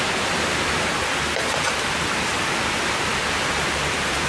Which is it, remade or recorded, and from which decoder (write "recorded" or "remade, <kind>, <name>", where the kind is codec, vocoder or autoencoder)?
remade, vocoder, BigVGAN v2